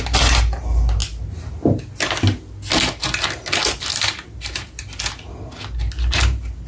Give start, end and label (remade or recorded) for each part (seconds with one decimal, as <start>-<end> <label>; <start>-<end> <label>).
0.0-3.9 recorded; 3.9-4.8 remade; 4.8-6.7 recorded